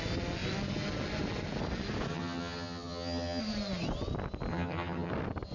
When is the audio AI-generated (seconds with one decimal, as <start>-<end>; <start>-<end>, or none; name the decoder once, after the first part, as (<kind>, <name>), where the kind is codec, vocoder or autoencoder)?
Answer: 2.1-3.4 (vocoder, HiFi-GAN); 4.5-5.1